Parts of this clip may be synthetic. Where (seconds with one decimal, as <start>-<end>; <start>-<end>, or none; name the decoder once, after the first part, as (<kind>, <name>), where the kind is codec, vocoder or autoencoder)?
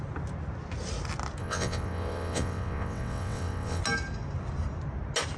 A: 1.4-3.8 (vocoder, WaveNeXt)